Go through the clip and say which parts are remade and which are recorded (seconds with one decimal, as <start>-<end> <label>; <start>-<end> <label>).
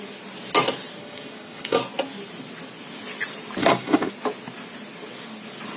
0.0-1.0 recorded; 1.0-1.8 remade; 1.8-3.6 recorded; 3.6-4.1 remade; 4.1-5.8 recorded